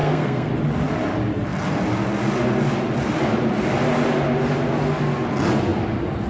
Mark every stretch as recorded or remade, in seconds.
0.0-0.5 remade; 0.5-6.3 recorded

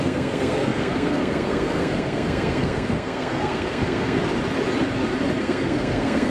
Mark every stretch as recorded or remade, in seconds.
0.0-4.2 remade; 4.2-5.4 recorded; 5.4-6.3 remade